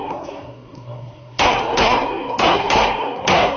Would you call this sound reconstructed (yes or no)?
yes